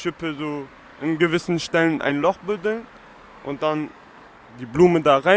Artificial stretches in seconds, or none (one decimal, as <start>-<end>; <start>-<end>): 0.9-2.1; 3.1-4.5